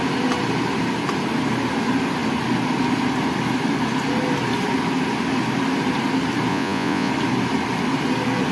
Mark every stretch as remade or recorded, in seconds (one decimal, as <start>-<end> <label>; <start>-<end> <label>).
0.0-6.5 recorded; 6.5-7.1 remade; 7.1-8.5 recorded